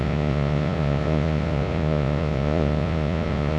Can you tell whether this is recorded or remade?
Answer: remade